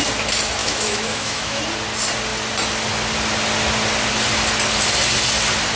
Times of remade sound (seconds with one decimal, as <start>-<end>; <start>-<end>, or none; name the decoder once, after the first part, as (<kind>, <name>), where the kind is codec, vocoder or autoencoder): 0.6-1.6 (autoencoder, DAC-VAE)